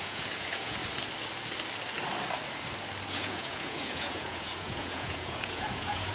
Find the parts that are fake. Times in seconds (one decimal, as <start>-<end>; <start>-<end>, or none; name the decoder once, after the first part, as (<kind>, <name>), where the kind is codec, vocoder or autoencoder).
0.0-0.8 (vocoder, Vocos); 3.1-6.1